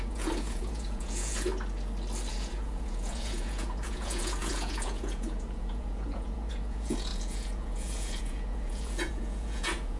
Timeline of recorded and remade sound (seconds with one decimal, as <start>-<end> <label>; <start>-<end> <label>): 0.0-1.5 remade; 1.5-2.3 recorded; 2.3-10.0 remade